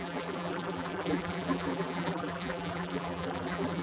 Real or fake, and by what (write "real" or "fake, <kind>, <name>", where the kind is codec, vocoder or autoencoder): fake, vocoder, BigVGAN v2